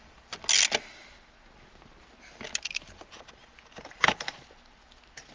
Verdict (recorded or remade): recorded